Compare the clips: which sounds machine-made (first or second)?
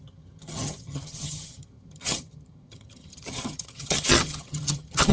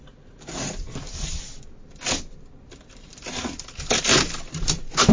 first